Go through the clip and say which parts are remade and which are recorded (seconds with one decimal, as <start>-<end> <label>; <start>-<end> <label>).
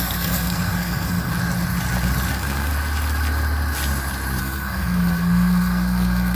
0.0-1.3 remade; 1.3-2.3 recorded; 2.3-2.7 remade; 2.7-4.4 recorded; 4.4-6.3 remade